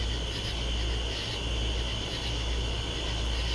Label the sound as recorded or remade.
recorded